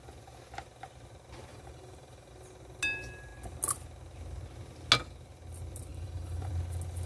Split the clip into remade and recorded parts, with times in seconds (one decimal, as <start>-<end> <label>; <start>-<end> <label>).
0.0-1.5 recorded; 1.5-2.3 remade; 2.3-5.9 recorded; 5.9-6.5 remade; 6.5-7.1 recorded